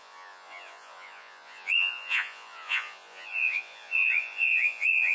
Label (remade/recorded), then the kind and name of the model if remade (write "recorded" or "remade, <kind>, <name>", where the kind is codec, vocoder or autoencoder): remade, vocoder, Vocos